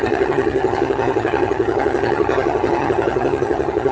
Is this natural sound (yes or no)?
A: no